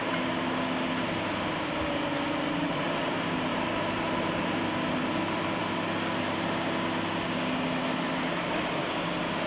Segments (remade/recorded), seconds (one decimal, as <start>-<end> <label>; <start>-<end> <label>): 0.0-3.5 recorded; 3.5-5.6 remade; 5.6-9.5 recorded